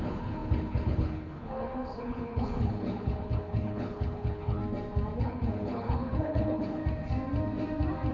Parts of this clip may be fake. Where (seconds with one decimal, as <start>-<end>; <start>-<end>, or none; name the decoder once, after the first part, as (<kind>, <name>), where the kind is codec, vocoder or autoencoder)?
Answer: 0.0-4.6 (codec, HILCodec); 5.2-6.8